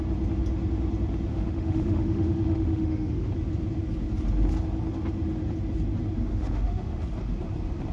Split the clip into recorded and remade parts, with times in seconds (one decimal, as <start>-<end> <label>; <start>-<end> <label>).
0.0-1.3 recorded; 1.3-3.3 remade; 3.3-6.3 recorded; 6.3-7.0 remade; 7.0-7.9 recorded